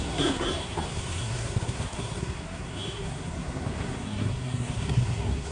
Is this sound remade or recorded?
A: remade